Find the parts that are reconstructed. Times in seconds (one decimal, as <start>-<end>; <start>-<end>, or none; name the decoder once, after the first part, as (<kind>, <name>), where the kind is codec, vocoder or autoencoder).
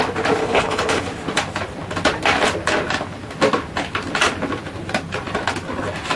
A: 0.4-1.0 (codec, HILCodec)